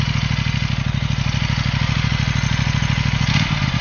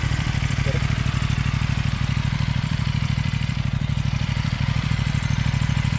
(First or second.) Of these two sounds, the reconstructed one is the second